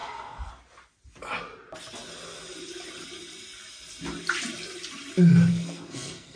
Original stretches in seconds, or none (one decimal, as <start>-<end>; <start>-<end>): 0.5-5.5